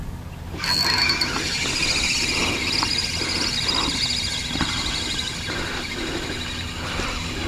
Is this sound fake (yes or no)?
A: no